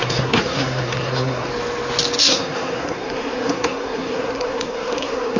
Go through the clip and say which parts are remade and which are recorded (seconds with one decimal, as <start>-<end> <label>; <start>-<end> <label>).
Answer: 0.0-1.5 remade; 1.5-2.2 recorded; 2.2-5.4 remade